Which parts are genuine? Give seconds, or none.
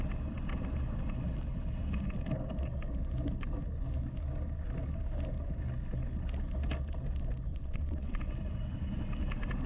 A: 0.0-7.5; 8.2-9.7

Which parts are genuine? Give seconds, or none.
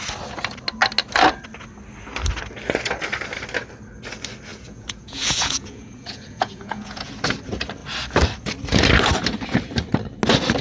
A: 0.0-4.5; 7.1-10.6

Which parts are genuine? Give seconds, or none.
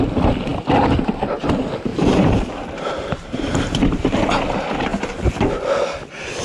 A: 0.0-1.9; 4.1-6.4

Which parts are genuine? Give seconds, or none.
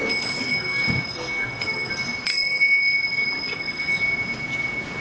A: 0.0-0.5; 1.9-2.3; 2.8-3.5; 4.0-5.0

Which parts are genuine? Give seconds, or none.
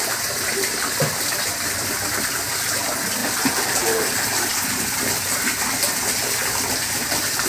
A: 0.0-7.5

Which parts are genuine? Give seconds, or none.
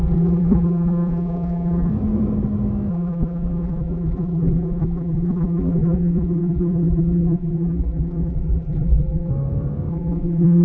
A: 1.9-2.9; 9.3-9.9